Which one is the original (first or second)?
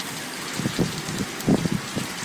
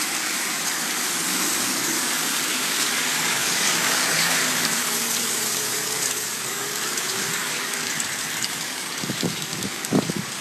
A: first